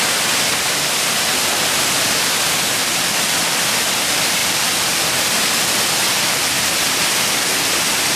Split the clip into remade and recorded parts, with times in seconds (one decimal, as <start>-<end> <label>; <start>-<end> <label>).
0.0-8.2 recorded